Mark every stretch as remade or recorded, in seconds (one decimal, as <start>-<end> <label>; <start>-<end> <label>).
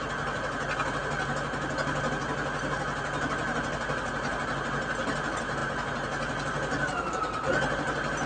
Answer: 0.0-8.3 recorded